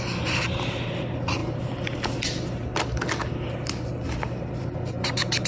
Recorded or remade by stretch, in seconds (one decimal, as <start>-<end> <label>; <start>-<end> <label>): 0.0-5.5 recorded